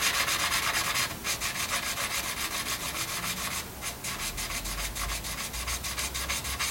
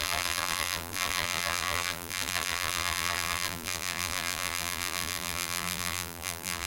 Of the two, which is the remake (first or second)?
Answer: second